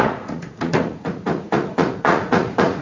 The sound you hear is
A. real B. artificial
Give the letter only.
B